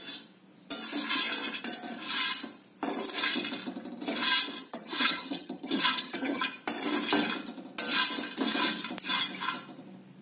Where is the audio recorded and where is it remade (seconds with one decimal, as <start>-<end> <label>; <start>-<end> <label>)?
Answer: 0.0-4.6 recorded; 4.6-6.4 remade; 6.4-10.2 recorded